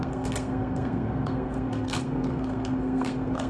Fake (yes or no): yes